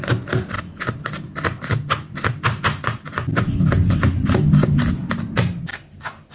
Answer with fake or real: real